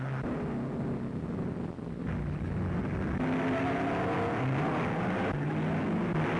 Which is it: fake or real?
real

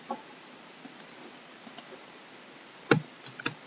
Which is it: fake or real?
real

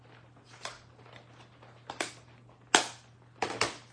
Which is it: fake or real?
real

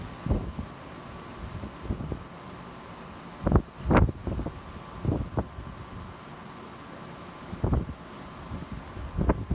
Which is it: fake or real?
real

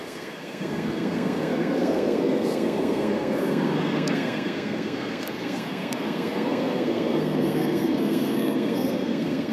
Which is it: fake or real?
fake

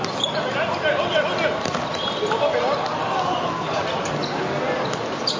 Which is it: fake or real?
real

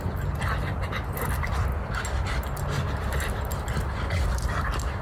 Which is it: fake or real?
real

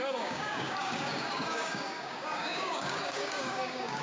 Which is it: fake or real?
fake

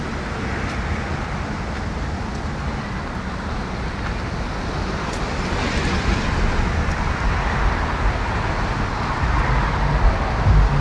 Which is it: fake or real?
real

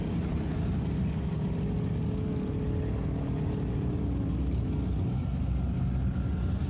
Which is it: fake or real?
real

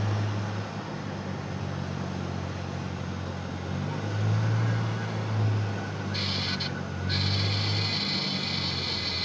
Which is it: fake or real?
real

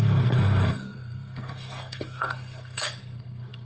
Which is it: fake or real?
fake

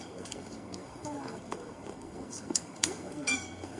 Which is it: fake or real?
fake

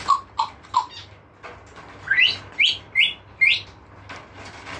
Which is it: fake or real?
real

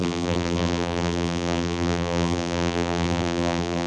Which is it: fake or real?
fake